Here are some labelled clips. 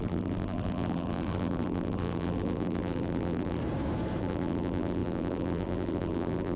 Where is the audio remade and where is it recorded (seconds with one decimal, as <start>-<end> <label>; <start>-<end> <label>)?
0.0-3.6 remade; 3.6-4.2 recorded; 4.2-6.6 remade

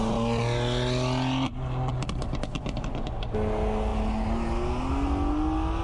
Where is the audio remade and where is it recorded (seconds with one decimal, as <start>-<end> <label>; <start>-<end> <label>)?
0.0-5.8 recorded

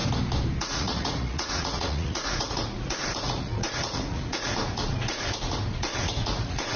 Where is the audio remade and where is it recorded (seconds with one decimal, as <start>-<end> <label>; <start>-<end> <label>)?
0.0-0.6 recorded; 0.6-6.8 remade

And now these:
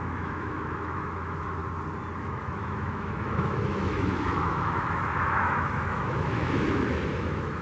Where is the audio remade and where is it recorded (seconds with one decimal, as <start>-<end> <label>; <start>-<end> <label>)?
0.0-1.6 remade; 1.6-2.2 recorded; 2.2-7.6 remade

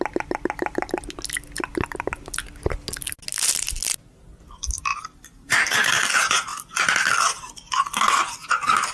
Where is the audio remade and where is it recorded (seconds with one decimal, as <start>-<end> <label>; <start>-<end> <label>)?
0.0-4.9 recorded; 4.9-5.9 remade; 5.9-8.9 recorded

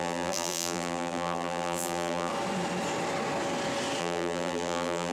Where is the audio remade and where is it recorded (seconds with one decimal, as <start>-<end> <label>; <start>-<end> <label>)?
0.0-2.3 remade; 2.3-4.0 recorded; 4.0-5.1 remade

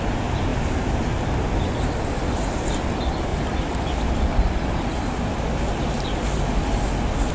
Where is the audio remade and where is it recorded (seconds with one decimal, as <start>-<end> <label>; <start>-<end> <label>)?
0.0-7.3 recorded